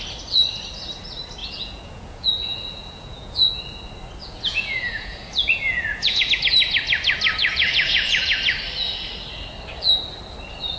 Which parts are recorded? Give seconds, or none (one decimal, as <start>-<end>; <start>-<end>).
0.0-1.4; 3.6-4.2; 6.3-7.4; 8.4-10.8